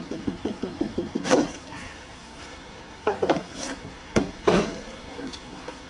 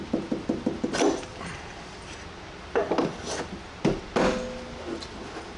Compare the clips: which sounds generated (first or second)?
first